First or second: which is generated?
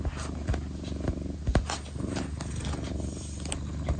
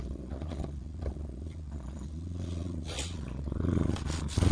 second